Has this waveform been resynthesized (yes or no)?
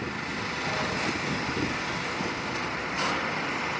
no